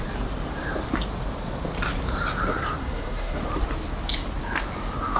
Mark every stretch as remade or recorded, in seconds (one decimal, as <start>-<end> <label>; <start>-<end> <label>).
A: 0.0-2.8 recorded; 2.8-3.4 remade; 3.4-5.2 recorded